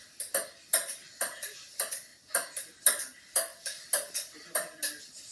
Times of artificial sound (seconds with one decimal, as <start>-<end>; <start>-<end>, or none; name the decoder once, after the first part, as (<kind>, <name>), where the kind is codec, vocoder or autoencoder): none